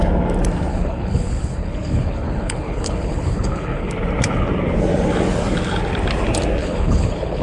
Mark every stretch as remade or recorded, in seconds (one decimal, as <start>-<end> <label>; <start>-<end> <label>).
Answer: 0.0-0.7 recorded; 0.7-3.9 remade; 3.9-6.6 recorded; 6.6-7.4 remade

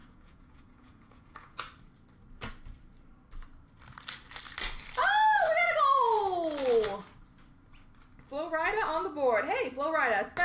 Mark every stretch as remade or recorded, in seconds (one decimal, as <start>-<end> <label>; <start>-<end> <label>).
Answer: 0.0-1.6 remade; 1.6-10.4 recorded

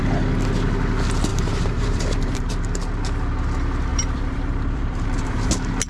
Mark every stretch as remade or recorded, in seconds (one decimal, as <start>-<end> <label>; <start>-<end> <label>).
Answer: 0.0-1.3 recorded; 1.3-2.5 remade; 2.5-3.9 recorded; 3.9-5.5 remade; 5.5-5.9 recorded

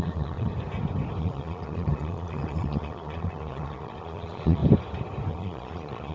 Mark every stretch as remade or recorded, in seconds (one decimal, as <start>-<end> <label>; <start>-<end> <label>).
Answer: 0.0-0.5 remade; 0.5-1.2 recorded; 1.2-4.6 remade; 4.6-5.3 recorded; 5.3-6.1 remade

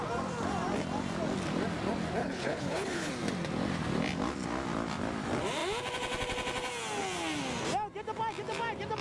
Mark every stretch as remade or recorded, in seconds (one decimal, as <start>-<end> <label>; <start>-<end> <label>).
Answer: 0.0-2.2 recorded; 2.2-3.1 remade; 3.1-9.0 recorded

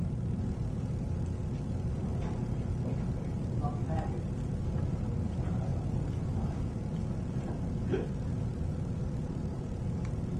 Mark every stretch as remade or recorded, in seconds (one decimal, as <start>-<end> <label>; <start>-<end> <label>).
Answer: 0.0-10.4 recorded

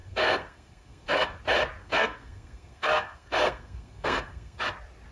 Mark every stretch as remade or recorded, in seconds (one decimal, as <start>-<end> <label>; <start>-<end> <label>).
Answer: 0.0-1.4 remade; 1.4-1.8 recorded; 1.8-4.6 remade; 4.6-5.1 recorded

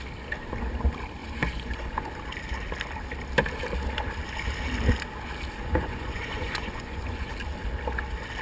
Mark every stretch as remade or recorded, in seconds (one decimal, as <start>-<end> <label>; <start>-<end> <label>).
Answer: 0.0-1.2 recorded; 1.2-2.1 remade; 2.1-5.6 recorded; 5.6-7.3 remade; 7.3-8.4 recorded